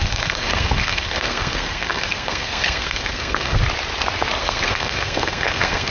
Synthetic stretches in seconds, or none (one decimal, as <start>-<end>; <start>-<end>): 0.0-3.6; 4.4-5.9